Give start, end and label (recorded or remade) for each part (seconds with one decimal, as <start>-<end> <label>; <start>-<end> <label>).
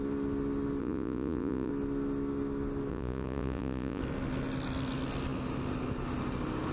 0.0-0.8 recorded; 0.8-1.7 remade; 1.7-2.9 recorded; 2.9-4.0 remade; 4.0-6.7 recorded